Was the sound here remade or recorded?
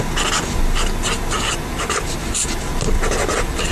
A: recorded